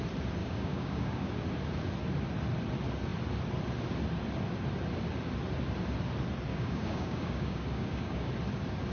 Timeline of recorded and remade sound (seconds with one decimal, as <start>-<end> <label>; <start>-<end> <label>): 0.0-0.4 recorded; 0.4-1.3 remade; 1.3-6.5 recorded; 6.5-8.3 remade; 8.3-8.9 recorded